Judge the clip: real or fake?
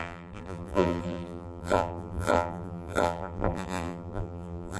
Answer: fake